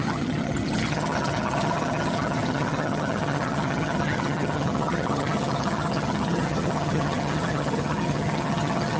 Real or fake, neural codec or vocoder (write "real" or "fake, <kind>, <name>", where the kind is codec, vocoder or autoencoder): fake, vocoder, HiFi-GAN